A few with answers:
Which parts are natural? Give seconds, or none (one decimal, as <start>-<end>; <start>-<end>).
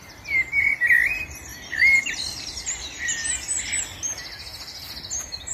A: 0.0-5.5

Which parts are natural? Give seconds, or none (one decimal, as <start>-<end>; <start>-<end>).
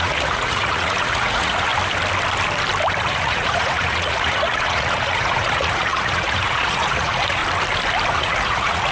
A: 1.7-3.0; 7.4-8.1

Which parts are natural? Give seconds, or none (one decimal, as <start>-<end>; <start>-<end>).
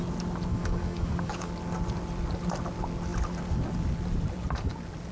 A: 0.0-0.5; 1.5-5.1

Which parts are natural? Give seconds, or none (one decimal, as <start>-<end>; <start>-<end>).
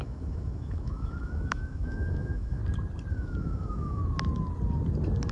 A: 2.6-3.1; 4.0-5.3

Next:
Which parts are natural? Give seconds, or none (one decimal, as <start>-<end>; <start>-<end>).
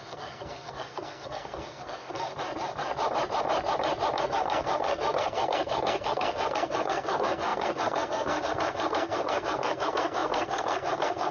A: 2.3-4.2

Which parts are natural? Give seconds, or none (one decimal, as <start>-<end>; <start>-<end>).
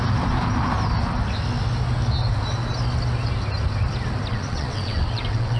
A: 0.0-4.3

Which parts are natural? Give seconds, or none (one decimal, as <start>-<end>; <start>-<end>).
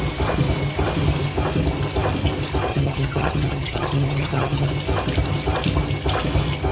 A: 0.0-2.7; 4.7-6.7